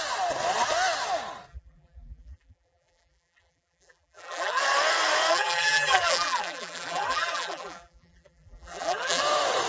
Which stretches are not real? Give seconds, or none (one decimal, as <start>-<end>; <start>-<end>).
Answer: 1.5-4.6; 5.3-9.2